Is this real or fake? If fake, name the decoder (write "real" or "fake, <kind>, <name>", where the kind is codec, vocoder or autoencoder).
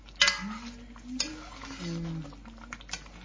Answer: real